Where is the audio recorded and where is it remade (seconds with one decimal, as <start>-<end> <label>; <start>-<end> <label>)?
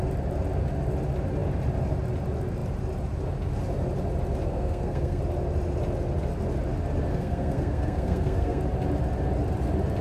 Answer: 0.0-4.5 recorded; 4.5-5.2 remade; 5.2-7.1 recorded; 7.1-8.6 remade; 8.6-10.0 recorded